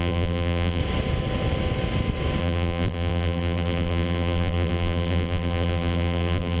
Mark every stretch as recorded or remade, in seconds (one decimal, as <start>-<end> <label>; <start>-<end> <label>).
0.0-0.8 remade; 0.8-2.4 recorded; 2.4-6.6 remade